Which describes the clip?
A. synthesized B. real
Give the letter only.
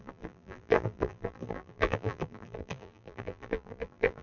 A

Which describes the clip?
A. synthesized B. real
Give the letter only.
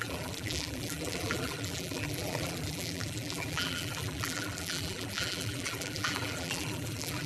A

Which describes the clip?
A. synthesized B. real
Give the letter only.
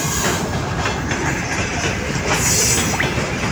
B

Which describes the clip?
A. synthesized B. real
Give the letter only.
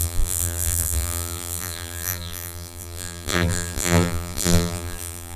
A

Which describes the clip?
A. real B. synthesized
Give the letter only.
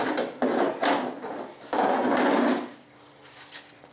A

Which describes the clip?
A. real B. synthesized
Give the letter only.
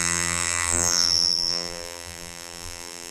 B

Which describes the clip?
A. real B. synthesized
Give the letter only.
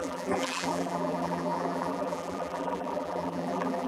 B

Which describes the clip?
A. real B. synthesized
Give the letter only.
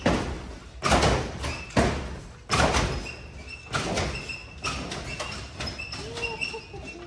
A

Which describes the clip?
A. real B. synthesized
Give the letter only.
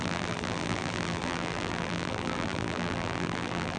B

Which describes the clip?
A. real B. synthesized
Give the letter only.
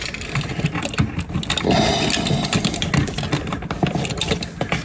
A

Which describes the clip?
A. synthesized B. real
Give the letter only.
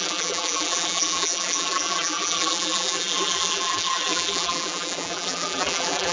A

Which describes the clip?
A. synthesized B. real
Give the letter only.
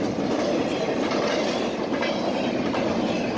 B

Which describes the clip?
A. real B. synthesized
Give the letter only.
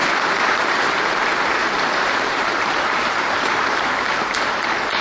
B